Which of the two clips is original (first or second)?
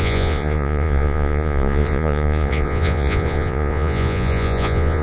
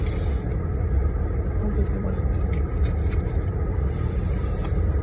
second